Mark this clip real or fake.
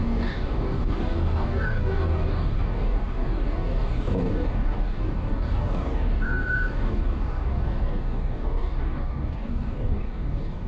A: fake